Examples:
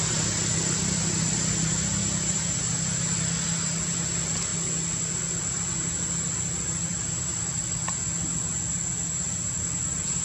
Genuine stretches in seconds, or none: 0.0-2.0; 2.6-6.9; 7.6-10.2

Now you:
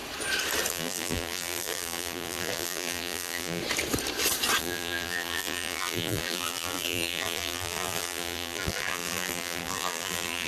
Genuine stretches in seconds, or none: 0.0-0.7; 3.6-4.6

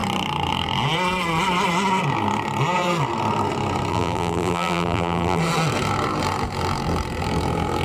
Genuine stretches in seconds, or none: 0.0-3.9; 5.4-7.8

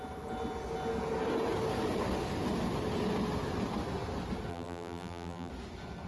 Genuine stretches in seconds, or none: 0.0-4.5; 5.5-6.1

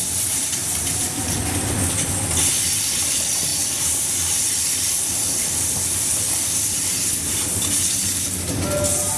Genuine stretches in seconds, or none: 0.0-0.6; 1.2-3.5; 4.4-9.2

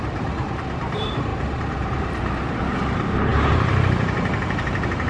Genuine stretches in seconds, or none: none

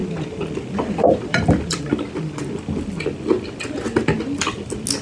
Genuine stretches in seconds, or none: 1.8-5.0

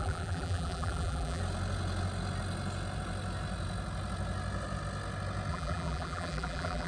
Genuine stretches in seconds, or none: 1.4-5.5